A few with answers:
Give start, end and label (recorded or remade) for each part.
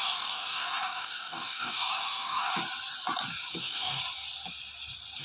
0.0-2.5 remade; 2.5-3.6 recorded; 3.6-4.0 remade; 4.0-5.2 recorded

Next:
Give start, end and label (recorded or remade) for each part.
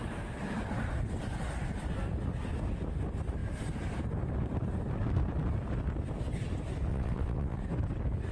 0.0-6.9 recorded; 6.9-7.6 remade; 7.6-8.3 recorded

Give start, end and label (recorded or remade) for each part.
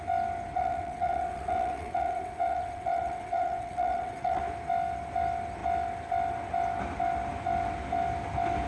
0.0-0.5 recorded; 0.5-4.4 remade; 4.4-8.7 recorded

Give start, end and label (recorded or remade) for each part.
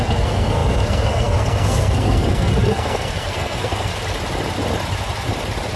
0.0-3.9 remade; 3.9-5.8 recorded